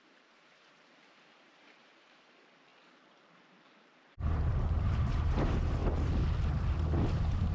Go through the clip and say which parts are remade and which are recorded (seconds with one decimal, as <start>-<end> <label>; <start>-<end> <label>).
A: 0.0-5.8 remade; 5.8-7.5 recorded